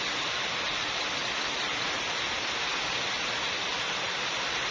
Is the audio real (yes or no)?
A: yes